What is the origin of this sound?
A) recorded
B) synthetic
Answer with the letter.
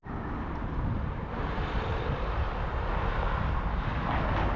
A